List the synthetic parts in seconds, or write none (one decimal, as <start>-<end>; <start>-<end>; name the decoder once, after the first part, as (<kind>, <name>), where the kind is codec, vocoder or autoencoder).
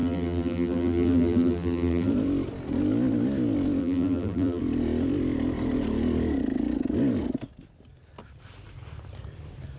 0.0-2.1 (vocoder, BigVGAN v2); 3.8-4.6